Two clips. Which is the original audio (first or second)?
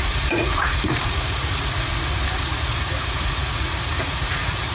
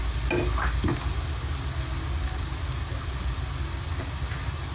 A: second